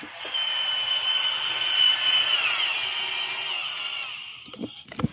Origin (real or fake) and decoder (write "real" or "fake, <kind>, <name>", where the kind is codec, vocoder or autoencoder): real